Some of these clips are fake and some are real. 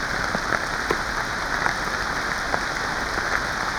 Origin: real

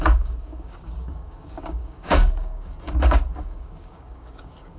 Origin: fake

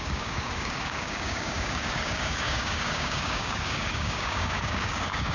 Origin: fake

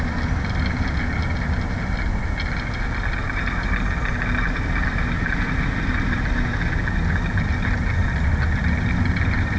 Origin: real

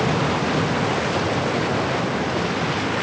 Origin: real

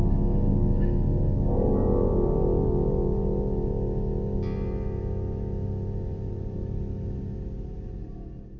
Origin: real